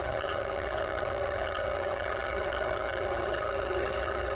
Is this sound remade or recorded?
remade